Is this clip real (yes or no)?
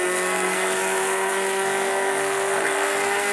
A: no